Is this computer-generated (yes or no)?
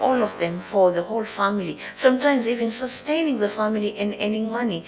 yes